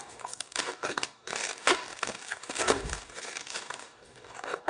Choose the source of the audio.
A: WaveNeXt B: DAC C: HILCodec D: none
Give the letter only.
B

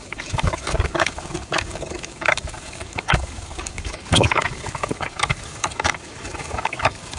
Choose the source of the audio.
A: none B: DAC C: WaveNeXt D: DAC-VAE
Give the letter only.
B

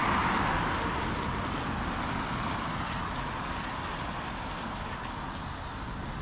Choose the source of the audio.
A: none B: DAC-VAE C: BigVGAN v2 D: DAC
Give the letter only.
A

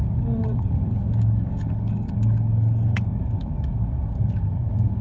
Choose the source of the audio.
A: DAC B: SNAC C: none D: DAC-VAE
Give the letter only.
A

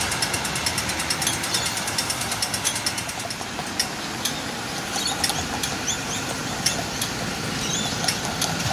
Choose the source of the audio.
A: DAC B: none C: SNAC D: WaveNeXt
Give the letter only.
B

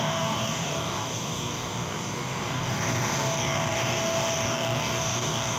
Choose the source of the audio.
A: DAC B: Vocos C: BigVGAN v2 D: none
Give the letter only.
A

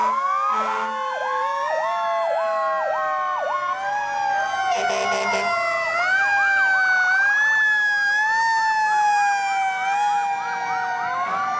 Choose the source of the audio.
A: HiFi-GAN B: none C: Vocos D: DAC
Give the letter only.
B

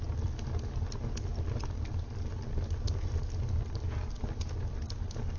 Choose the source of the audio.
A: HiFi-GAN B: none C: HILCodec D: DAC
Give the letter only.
B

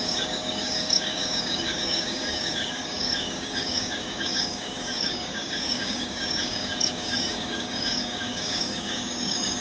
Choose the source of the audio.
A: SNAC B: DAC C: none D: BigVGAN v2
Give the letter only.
B